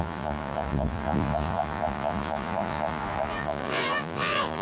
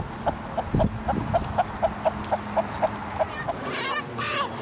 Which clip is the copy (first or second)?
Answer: first